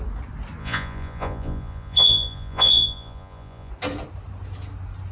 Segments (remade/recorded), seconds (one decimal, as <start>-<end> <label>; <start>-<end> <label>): 0.0-0.6 recorded; 0.6-3.7 remade; 3.7-5.1 recorded